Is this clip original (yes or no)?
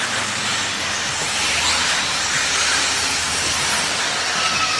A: yes